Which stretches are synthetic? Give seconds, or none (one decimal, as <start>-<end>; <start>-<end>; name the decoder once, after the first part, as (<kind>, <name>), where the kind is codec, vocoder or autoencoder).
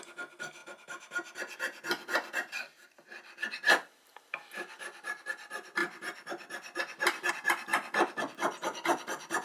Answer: none